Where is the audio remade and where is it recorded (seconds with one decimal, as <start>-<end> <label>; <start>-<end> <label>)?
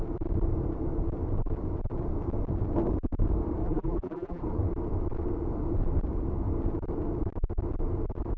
0.0-3.6 recorded; 3.6-4.4 remade; 4.4-8.4 recorded